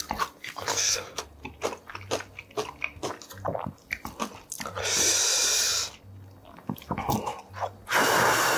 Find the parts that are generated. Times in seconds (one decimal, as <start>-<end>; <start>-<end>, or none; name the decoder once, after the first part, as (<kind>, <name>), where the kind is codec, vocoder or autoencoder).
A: 0.4-1.2 (codec, SNAC)